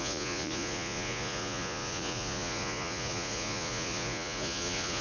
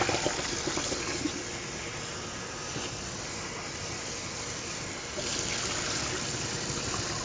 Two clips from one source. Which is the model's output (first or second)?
first